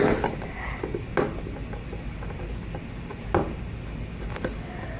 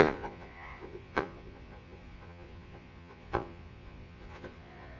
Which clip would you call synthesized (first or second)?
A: second